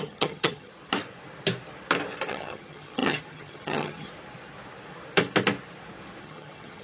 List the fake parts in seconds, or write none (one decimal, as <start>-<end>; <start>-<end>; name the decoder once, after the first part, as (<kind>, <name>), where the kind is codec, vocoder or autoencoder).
0.0-0.7 (vocoder, HiFi-GAN); 2.3-4.1; 6.2-6.8